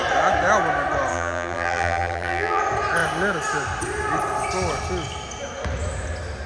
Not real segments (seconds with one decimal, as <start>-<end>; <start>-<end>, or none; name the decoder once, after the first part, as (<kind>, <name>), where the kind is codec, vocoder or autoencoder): 1.1-2.6 (vocoder, BigVGAN v2)